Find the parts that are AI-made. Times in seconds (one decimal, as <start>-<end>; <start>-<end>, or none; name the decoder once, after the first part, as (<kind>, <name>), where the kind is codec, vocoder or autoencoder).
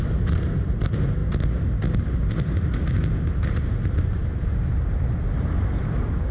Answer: 0.0-1.2 (vocoder, BigVGAN v2); 2.3-3.0; 3.5-4.2; 5.8-6.3